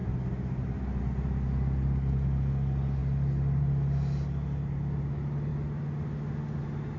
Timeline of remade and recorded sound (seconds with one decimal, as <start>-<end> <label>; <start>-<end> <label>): 0.0-7.0 recorded